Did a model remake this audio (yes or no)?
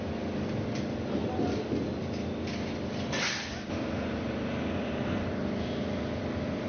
no